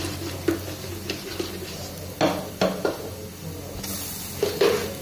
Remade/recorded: recorded